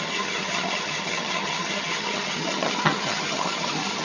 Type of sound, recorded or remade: remade